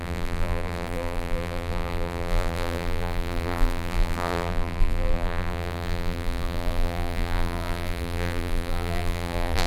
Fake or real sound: fake